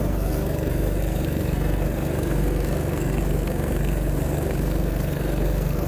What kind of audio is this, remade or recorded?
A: remade